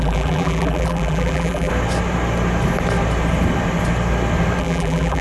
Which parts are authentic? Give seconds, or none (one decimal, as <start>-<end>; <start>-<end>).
1.7-4.6